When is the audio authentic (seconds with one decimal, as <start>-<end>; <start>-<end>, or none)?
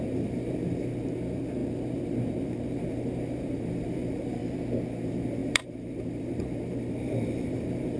4.4-4.9